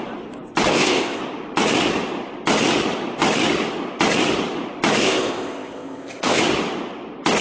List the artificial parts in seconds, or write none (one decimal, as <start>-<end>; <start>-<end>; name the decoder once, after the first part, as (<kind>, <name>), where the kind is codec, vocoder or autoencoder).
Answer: 0.7-1.2 (codec, ZipCodec); 5.0-6.4

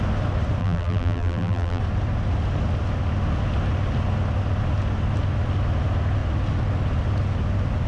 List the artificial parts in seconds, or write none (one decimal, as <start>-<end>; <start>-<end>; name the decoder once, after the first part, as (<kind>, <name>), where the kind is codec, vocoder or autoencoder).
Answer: 0.6-1.8 (vocoder, BigVGAN v2)

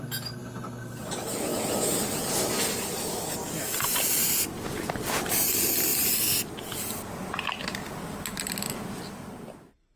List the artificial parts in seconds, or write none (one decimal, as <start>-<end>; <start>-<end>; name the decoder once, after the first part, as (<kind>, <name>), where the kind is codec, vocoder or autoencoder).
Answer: none

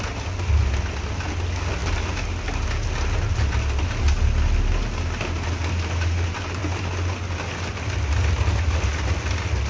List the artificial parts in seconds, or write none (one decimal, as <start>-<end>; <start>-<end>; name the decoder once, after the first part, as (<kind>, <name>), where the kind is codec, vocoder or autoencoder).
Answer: none

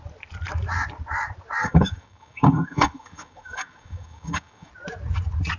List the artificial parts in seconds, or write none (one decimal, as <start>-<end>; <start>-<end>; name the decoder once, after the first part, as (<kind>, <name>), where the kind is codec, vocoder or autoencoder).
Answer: 1.6-4.7 (codec, DAC)

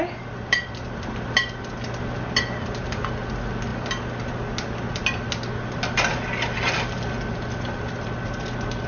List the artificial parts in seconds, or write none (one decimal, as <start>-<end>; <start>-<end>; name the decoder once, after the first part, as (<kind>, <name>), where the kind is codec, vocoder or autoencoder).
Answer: none

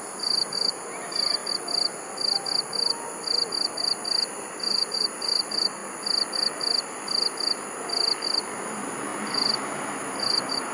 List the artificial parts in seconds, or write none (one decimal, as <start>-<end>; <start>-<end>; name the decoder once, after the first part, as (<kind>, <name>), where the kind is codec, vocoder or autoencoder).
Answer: 0.0-1.4 (vocoder, BigVGAN v2); 4.5-5.8; 8.6-10.7

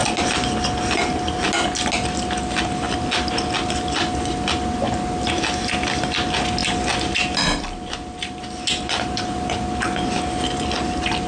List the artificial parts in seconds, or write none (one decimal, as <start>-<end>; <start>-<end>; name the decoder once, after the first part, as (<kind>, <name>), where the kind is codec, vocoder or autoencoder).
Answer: none